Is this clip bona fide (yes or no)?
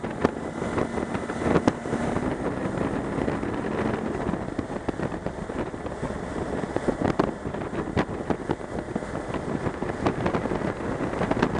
yes